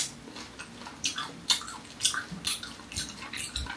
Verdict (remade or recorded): recorded